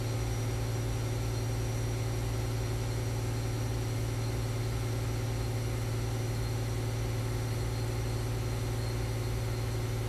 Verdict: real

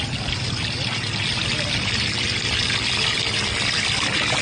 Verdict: real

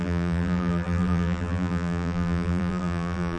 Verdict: fake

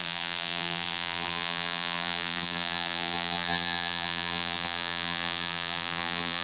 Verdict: fake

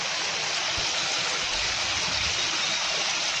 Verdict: real